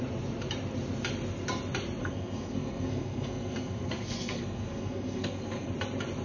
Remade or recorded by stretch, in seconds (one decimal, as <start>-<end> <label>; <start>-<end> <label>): 0.0-2.0 recorded; 2.0-5.7 remade; 5.7-6.2 recorded

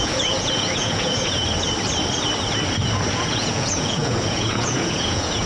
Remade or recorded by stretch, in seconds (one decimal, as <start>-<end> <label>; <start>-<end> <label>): 0.0-1.4 remade; 1.4-3.1 recorded; 3.1-5.5 remade

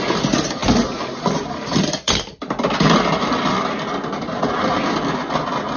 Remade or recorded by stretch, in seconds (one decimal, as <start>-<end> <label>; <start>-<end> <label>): 0.0-5.8 recorded

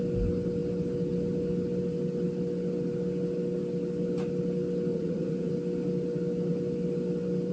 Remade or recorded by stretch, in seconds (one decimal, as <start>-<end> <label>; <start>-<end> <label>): 0.0-4.9 recorded; 4.9-5.5 remade; 5.5-7.5 recorded

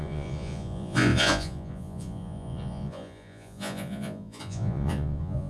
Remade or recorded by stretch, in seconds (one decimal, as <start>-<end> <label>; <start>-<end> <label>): 0.0-5.5 remade

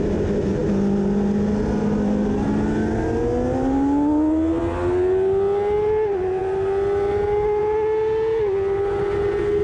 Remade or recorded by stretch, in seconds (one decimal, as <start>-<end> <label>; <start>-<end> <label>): 0.0-9.6 recorded

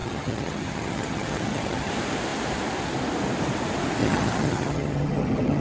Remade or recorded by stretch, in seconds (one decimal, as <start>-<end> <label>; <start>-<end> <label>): 0.0-1.9 remade; 1.9-4.0 recorded; 4.0-5.6 remade

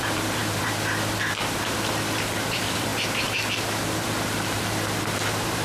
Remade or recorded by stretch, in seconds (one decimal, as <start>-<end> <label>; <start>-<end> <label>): 0.0-2.9 remade; 2.9-4.0 recorded; 4.0-5.6 remade